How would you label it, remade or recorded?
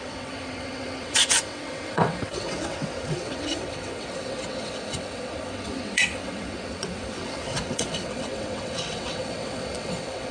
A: remade